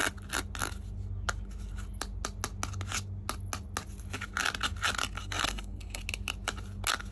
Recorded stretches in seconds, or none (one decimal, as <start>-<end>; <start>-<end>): 0.0-5.2; 6.0-7.1